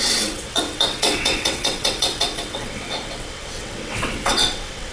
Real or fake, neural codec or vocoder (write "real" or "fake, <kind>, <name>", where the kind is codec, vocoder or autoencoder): fake, vocoder, WaveNeXt